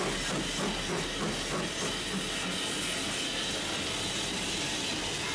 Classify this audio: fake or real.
real